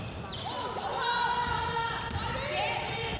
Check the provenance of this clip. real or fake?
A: real